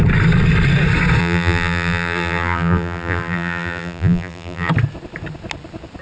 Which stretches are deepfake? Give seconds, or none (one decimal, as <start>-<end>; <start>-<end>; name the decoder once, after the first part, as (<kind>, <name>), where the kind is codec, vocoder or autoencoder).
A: 1.2-4.7 (vocoder, BigVGAN v2)